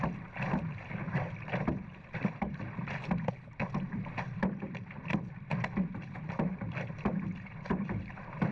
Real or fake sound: fake